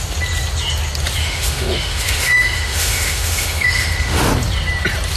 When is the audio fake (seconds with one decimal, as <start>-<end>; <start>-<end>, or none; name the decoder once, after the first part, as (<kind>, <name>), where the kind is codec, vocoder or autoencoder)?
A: 1.2-4.3 (autoencoder, DAC-VAE)